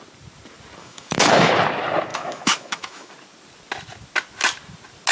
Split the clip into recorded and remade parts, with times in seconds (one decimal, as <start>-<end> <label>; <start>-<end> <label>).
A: 0.0-0.8 recorded; 0.8-1.5 remade; 1.5-2.1 recorded; 2.1-3.1 remade; 3.1-5.1 recorded